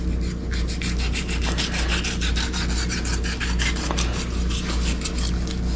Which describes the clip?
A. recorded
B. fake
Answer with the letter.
A